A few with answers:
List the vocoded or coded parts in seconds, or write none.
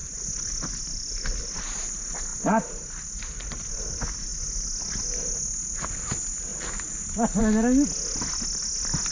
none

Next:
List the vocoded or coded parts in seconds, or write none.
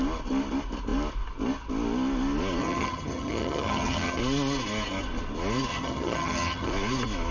2.6-4.2 (vocoder, HiFi-GAN); 5.7-6.7